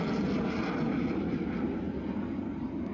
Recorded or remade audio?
recorded